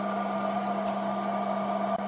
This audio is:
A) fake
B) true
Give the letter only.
B